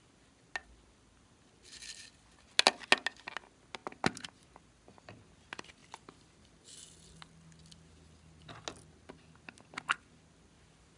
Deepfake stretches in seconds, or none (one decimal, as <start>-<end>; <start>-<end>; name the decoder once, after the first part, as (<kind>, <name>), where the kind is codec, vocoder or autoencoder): none